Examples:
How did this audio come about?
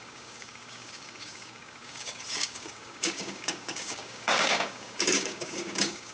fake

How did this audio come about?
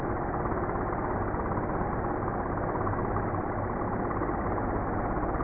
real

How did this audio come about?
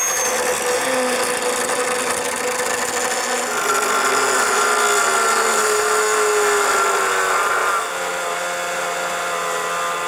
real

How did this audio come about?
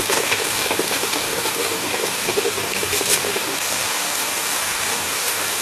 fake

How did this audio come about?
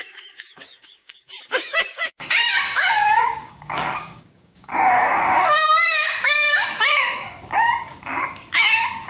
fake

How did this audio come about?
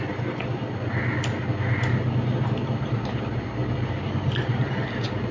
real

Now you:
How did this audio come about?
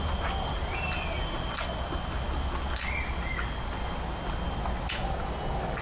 real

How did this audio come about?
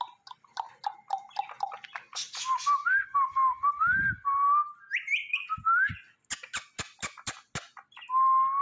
real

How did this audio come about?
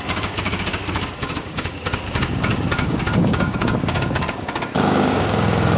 fake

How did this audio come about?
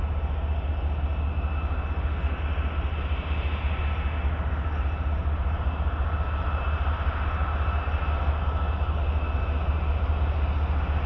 real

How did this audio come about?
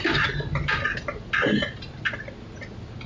real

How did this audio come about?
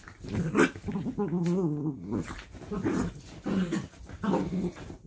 real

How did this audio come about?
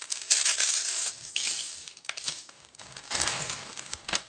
fake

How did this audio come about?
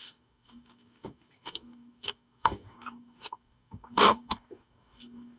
fake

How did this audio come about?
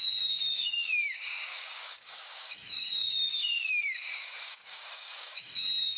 fake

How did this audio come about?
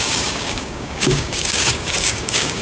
fake